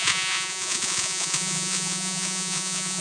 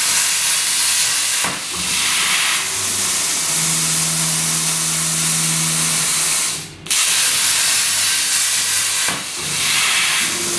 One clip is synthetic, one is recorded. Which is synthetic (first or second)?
first